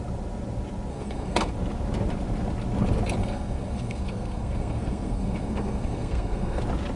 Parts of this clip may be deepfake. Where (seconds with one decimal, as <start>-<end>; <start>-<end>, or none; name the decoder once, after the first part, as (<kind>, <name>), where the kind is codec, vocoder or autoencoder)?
0.9-1.5 (codec, SNAC); 3.2-6.6

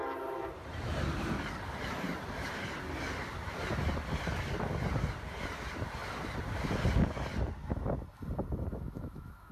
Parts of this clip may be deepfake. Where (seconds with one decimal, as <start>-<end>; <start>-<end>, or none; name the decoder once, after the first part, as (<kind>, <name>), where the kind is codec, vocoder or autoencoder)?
8.7-9.5 (autoencoder, DAC-VAE)

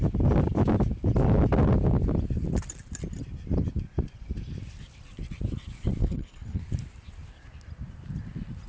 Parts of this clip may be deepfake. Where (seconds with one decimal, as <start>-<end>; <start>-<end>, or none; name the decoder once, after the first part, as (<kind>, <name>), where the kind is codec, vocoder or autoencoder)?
6.0-6.6 (codec, HILCodec)

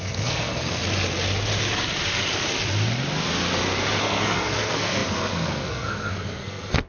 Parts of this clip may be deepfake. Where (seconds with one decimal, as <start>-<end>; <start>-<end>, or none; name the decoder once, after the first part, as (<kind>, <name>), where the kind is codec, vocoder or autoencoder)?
0.0-0.8 (codec, SNAC); 4.0-6.9

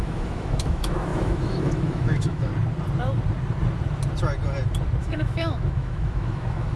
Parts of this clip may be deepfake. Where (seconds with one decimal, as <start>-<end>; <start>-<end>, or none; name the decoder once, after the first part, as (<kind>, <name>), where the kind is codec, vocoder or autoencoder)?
0.0-2.5 (autoencoder, DAC-VAE); 5.0-6.8

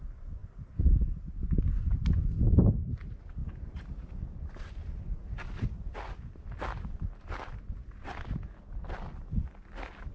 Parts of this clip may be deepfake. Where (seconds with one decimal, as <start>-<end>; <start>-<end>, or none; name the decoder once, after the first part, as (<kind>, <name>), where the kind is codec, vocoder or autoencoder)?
none